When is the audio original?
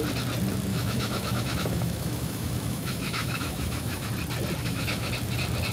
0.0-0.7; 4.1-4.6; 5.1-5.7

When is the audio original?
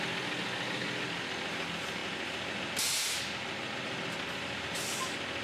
0.0-5.4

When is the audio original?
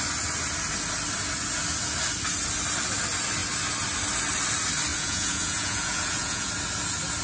0.0-4.9; 6.5-7.2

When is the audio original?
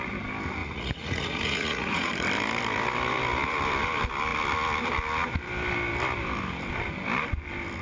0.0-0.6; 2.1-7.8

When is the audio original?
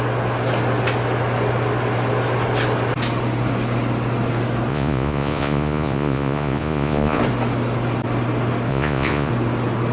0.0-4.7; 7.2-8.7; 9.3-9.9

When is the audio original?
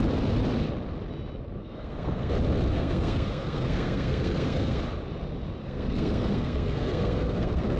0.0-1.6; 2.3-2.7; 4.8-5.6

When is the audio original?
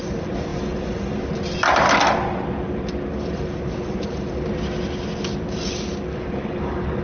0.0-6.1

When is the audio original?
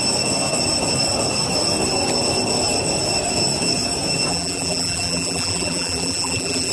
0.0-4.3